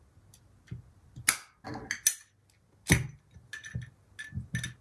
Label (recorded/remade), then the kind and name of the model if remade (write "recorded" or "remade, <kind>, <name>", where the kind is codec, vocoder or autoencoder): recorded